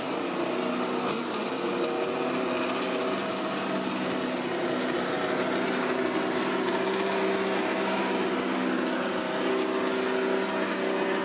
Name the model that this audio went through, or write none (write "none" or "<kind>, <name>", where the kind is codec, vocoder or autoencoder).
none